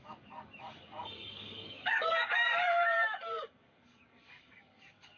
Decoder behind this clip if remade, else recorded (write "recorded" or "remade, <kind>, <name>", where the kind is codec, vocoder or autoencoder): remade, codec, DAC